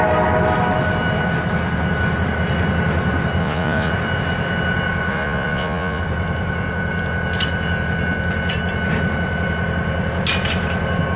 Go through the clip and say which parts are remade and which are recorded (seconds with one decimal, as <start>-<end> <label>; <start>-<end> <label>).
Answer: 0.0-3.4 recorded; 3.4-3.9 remade; 3.9-5.1 recorded; 5.1-6.0 remade; 6.0-11.2 recorded